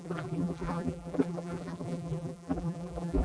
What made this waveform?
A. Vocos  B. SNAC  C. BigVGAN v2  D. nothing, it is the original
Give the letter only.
C